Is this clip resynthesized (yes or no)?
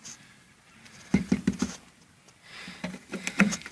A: no